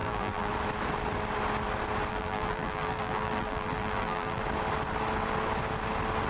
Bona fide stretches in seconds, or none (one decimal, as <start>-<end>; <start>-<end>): 0.5-2.1; 4.4-6.3